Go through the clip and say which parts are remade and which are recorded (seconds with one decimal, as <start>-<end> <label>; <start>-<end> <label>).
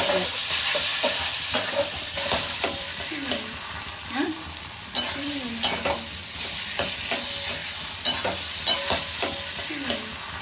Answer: 0.0-0.9 recorded; 0.9-5.4 remade; 5.4-7.6 recorded; 7.6-8.8 remade; 8.8-10.4 recorded